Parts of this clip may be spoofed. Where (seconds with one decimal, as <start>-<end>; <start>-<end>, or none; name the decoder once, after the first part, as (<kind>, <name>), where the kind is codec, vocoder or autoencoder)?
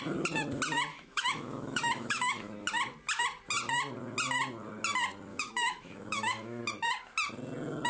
0.9-2.5 (autoencoder, DAC-VAE); 5.3-6.6